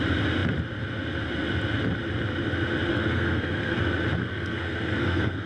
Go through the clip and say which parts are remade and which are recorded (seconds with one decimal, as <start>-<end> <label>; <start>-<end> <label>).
0.0-2.9 recorded; 2.9-3.8 remade; 3.8-4.2 recorded; 4.2-5.5 remade